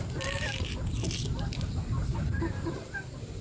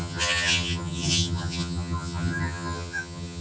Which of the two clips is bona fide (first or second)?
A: first